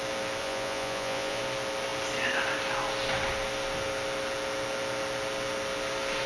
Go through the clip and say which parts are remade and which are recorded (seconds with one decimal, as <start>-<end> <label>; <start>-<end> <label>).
0.0-0.4 recorded; 0.4-1.4 remade; 1.4-6.3 recorded